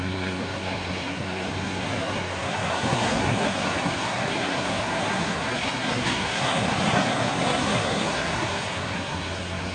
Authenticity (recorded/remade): remade